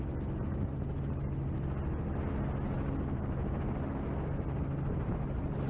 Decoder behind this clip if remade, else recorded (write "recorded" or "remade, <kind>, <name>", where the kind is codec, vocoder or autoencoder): recorded